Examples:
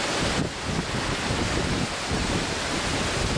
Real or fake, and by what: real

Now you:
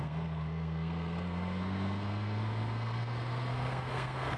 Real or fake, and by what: fake, codec, SNAC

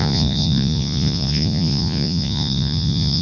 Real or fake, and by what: fake, vocoder, Vocos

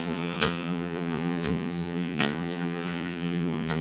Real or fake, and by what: fake, vocoder, Vocos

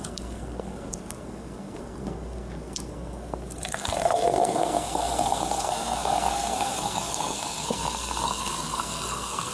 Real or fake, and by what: fake, codec, SNAC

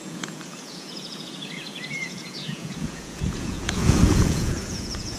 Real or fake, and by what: fake, vocoder, Vocos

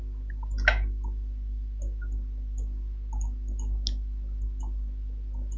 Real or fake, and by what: real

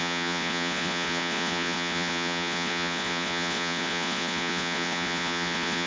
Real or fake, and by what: fake, vocoder, Vocos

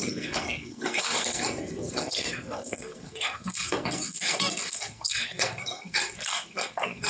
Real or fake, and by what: fake, codec, SNAC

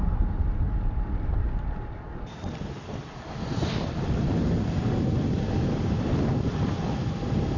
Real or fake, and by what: real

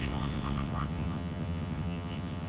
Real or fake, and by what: fake, vocoder, WaveNeXt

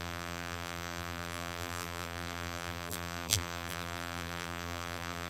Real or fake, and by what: fake, vocoder, BigVGAN v2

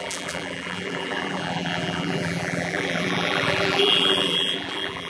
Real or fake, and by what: fake, vocoder, BigVGAN v2